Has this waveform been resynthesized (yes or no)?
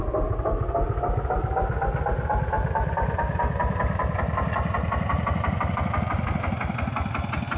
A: no